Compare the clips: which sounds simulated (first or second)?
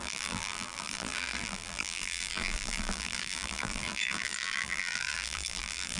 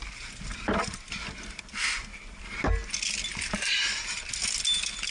first